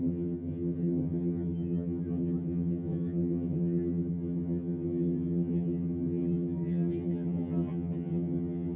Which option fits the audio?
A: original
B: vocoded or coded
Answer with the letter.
B